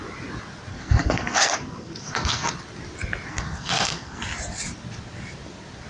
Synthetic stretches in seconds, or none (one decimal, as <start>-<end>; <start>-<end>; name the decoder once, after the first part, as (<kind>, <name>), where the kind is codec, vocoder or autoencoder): 0.7-2.5 (codec, SNAC); 3.3-4.2